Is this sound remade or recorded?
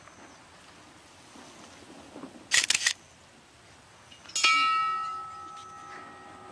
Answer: recorded